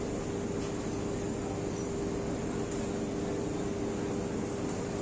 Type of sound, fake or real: real